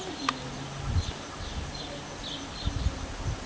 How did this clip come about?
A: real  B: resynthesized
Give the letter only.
A